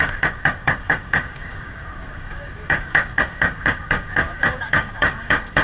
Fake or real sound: fake